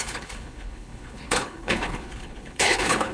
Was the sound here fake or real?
fake